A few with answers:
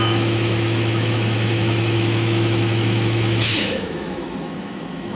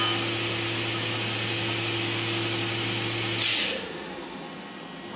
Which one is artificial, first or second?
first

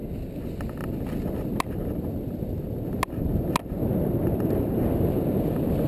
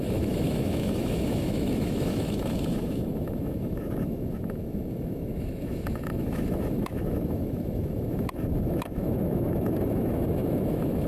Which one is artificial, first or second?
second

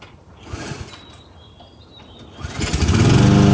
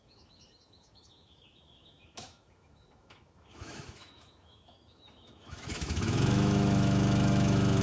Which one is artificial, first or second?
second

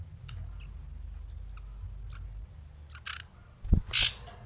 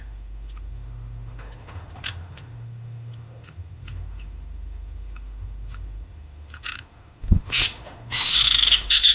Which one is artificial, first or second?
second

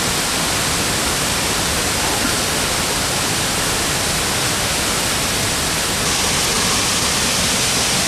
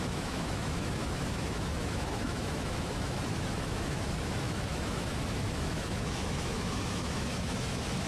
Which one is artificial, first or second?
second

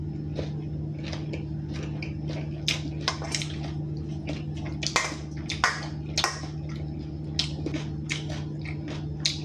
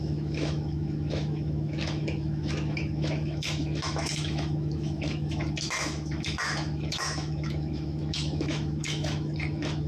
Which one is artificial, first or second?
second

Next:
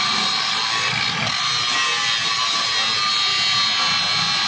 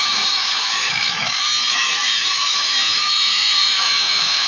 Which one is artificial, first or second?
second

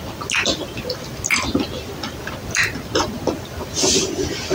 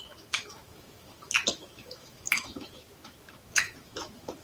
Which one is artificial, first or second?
second